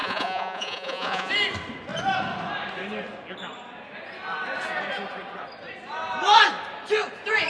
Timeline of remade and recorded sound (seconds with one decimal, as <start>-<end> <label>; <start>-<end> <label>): 0.0-1.3 remade; 1.3-7.5 recorded